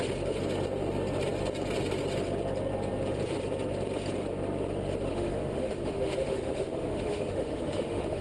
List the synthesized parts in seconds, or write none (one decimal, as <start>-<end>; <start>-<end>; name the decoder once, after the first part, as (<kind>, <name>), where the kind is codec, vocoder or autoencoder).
5.1-8.2 (autoencoder, DAC-VAE)